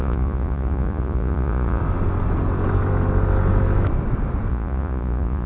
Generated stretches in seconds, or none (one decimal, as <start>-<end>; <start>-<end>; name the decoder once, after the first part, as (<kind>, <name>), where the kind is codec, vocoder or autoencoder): 0.0-1.8 (vocoder, Vocos); 4.5-5.5